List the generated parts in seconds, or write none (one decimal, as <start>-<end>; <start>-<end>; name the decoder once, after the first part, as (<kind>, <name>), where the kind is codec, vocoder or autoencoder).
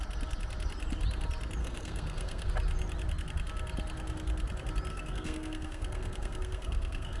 1.6-2.5 (codec, SNAC); 4.9-7.2